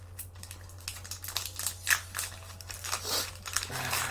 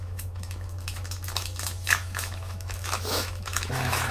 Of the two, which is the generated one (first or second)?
second